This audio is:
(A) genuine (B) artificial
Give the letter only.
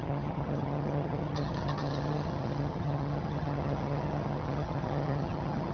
B